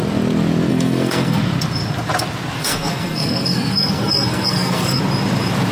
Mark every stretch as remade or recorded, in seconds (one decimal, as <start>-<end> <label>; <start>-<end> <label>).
0.0-0.7 recorded; 0.7-1.4 remade; 1.4-2.6 recorded; 2.6-5.0 remade; 5.0-5.7 recorded